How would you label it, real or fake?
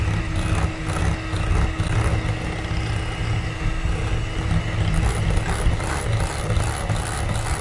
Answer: real